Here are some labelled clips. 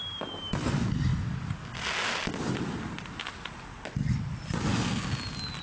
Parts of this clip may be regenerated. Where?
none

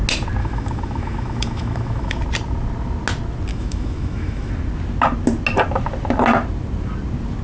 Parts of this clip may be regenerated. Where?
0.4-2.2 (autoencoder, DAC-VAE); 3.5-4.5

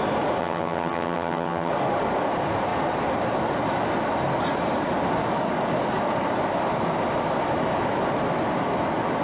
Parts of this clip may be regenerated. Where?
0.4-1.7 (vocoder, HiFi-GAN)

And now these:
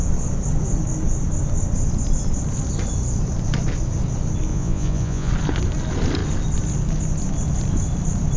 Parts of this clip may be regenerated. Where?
4.5-5.3 (vocoder, Vocos)

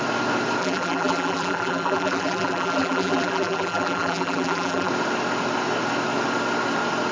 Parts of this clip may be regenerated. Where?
0.6-4.9 (vocoder, BigVGAN v2)

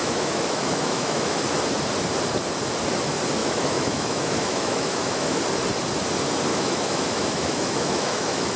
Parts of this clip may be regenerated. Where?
0.0-1.4 (autoencoder, DAC-VAE); 3.4-5.4; 6.5-8.6